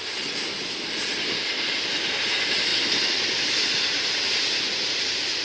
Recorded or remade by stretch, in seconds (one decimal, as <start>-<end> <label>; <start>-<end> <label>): 0.0-0.5 recorded; 0.5-1.7 remade; 1.7-2.7 recorded; 2.7-5.0 remade; 5.0-5.4 recorded